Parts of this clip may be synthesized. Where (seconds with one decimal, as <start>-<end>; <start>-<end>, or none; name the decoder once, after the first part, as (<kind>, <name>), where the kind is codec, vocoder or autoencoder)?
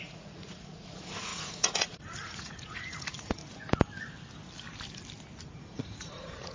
0.0-3.4 (vocoder, Vocos); 5.4-6.5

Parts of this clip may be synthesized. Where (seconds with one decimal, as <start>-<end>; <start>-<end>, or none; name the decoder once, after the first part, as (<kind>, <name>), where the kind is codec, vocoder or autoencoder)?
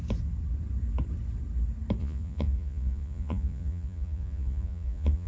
2.0-5.3 (vocoder, Vocos)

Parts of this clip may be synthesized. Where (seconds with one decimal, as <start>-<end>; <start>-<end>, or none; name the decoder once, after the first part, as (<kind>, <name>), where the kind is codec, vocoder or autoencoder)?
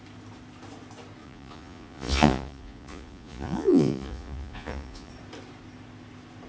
1.2-5.1 (vocoder, Vocos)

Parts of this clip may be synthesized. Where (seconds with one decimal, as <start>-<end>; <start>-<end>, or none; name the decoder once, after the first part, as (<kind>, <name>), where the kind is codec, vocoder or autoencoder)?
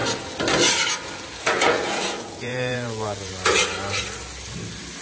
1.4-3.3 (vocoder, Vocos)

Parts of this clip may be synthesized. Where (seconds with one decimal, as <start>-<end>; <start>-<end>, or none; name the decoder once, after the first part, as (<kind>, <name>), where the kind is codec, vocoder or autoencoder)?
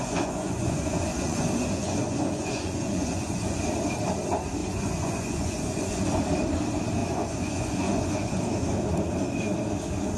0.0-3.6 (vocoder, Vocos); 4.6-6.2; 7.0-8.4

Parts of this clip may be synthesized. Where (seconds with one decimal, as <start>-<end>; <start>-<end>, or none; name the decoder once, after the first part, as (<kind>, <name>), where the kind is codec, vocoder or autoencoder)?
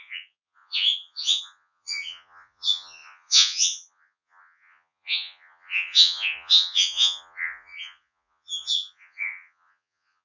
0.0-10.2 (vocoder, Vocos)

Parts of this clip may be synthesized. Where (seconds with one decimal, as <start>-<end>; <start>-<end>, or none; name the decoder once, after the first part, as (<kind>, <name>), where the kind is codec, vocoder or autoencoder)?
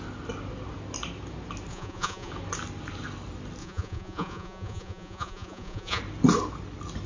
1.7-2.3 (vocoder, Vocos); 3.6-6.0